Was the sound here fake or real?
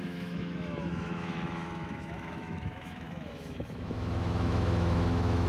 fake